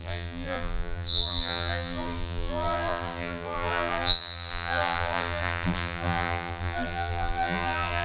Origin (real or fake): fake